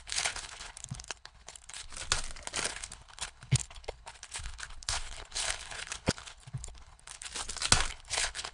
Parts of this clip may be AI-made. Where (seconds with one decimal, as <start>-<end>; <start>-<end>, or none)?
0.0-1.9; 2.7-7.3; 7.9-8.5